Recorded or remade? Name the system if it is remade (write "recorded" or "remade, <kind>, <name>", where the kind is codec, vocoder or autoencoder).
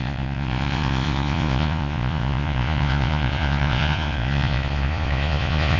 remade, vocoder, Vocos